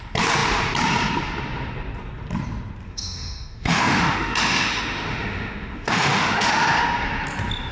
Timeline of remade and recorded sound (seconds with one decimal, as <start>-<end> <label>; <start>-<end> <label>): 0.0-2.9 recorded; 2.9-6.8 remade; 6.8-7.7 recorded